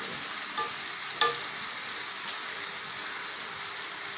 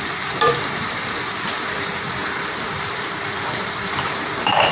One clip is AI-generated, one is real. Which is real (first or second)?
first